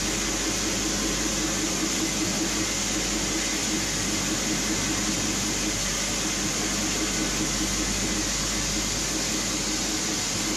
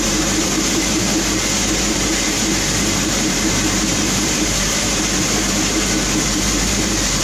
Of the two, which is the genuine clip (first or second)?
first